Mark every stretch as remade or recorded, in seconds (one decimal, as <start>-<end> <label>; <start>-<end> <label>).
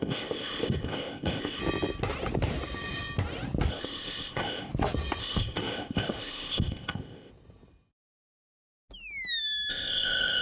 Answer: 0.0-1.6 remade; 1.6-3.7 recorded; 3.7-4.7 remade; 4.7-5.2 recorded; 5.2-7.3 remade; 7.3-9.7 recorded; 9.7-10.4 remade